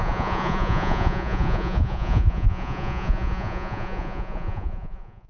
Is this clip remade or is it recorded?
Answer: remade